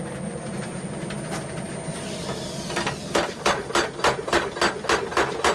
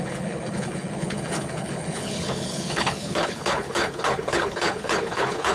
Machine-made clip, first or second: second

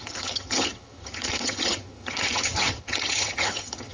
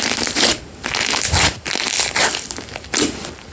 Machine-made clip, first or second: first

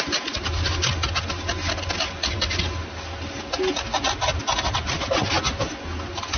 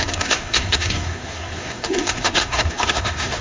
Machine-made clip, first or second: second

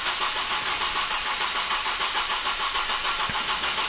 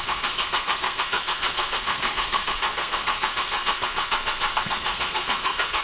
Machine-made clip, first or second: second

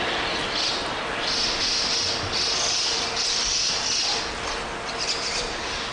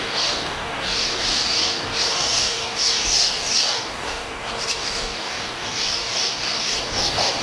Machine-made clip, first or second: second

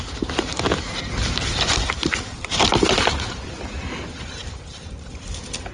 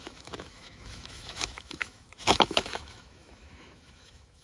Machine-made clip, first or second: second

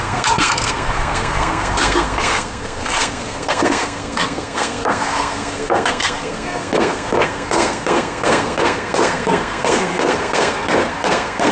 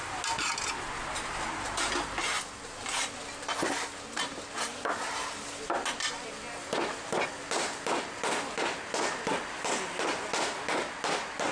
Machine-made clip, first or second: first